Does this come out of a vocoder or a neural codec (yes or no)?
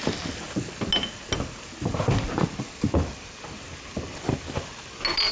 no